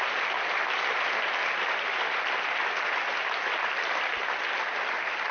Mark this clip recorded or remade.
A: recorded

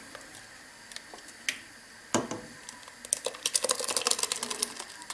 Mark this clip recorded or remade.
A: remade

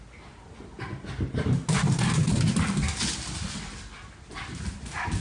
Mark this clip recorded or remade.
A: recorded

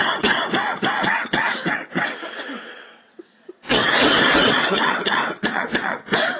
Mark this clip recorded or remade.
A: remade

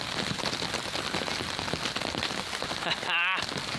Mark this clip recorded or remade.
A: recorded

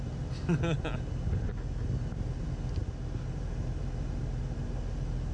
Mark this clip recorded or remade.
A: recorded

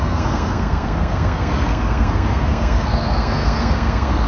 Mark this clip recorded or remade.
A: remade